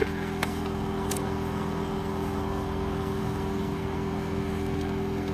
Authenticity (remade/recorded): remade